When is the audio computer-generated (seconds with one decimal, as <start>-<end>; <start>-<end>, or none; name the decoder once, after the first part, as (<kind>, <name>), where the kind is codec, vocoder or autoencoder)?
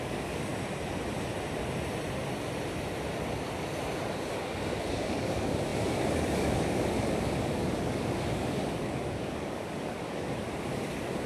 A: 0.0-0.5 (codec, DAC); 4.1-11.3